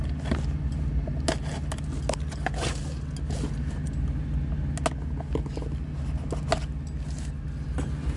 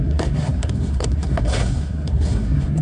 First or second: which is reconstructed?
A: second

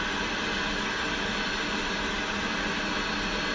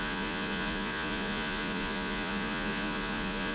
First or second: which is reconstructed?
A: second